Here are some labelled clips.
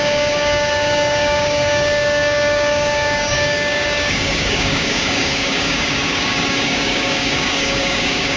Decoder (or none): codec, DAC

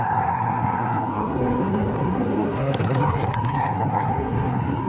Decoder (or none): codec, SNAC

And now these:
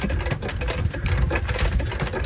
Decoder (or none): none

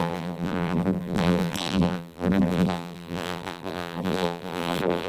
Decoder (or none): vocoder, BigVGAN v2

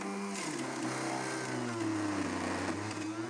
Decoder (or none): none